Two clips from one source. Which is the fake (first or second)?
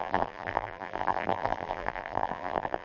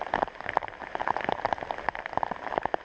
first